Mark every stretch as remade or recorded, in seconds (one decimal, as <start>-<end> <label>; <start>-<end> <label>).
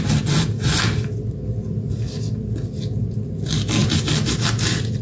0.0-5.0 recorded